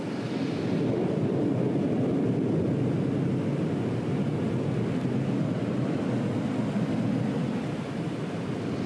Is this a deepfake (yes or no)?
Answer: no